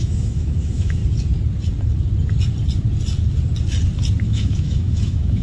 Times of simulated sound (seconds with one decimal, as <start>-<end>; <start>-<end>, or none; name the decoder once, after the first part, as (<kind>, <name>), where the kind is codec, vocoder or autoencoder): 0.0-1.0 (autoencoder, DAC-VAE); 4.2-5.4